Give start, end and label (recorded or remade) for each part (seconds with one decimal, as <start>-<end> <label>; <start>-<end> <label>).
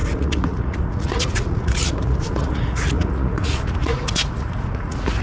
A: 0.0-5.2 remade